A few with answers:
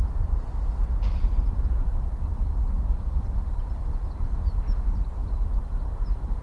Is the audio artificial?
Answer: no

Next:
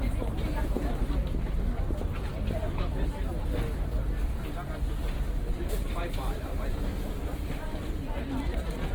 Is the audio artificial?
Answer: no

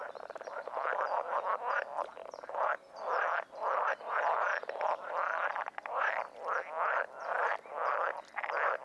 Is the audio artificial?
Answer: no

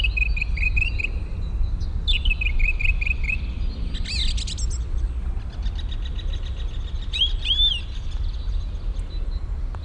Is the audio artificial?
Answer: no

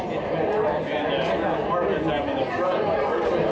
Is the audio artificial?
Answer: no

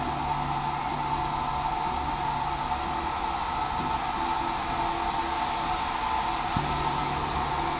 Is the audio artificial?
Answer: no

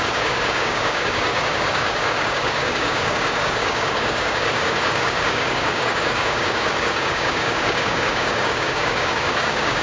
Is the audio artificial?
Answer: yes